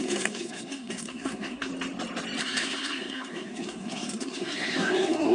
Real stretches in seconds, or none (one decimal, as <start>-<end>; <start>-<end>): 1.7-2.4